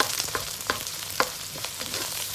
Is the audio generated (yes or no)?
yes